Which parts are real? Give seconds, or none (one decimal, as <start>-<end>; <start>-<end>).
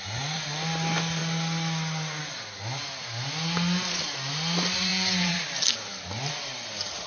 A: 0.0-4.9; 5.4-7.1